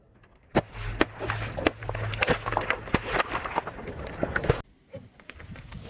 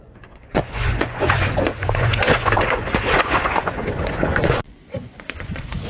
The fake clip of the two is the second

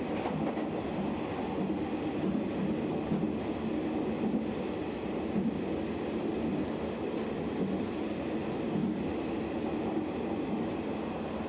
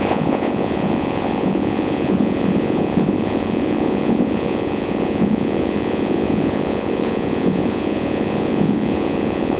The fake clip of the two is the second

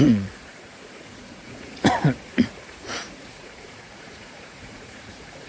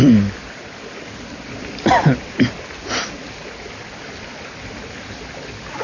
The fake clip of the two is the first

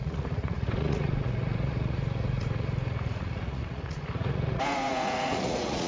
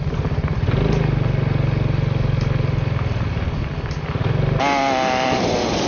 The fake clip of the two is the first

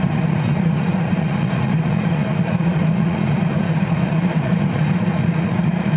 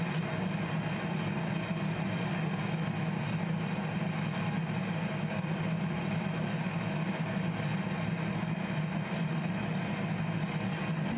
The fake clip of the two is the first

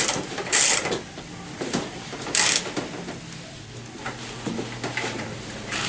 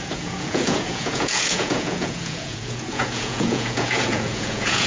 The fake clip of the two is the second